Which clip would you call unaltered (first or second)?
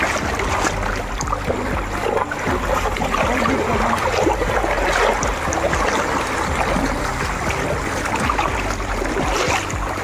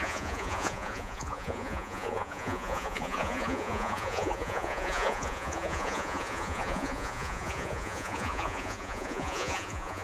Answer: first